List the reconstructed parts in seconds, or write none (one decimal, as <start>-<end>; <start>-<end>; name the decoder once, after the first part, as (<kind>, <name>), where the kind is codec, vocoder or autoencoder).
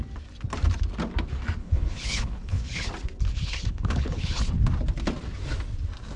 1.6-2.9 (codec, HILCodec); 3.3-4.5